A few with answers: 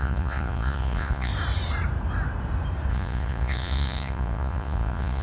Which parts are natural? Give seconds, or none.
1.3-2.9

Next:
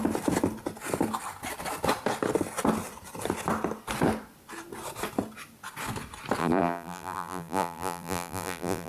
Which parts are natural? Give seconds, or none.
0.0-6.4

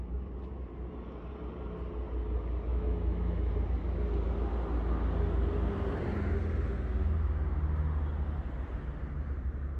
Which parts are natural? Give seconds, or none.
0.0-2.7; 3.5-9.8